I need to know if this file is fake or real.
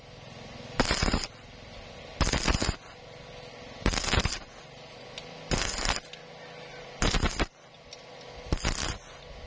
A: real